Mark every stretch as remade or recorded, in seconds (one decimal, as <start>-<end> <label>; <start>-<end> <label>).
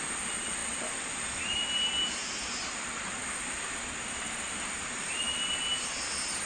0.0-6.5 recorded